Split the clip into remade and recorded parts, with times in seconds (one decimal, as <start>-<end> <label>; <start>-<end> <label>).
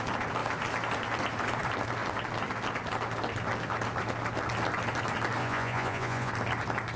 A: 0.0-5.4 recorded; 5.4-6.3 remade; 6.3-7.0 recorded